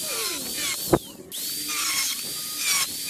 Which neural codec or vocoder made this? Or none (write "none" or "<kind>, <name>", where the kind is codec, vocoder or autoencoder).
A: none